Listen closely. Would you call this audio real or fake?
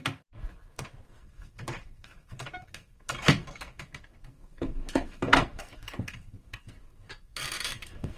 fake